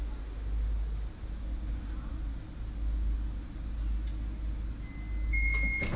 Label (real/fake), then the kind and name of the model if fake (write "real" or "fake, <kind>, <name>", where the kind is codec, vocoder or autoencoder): real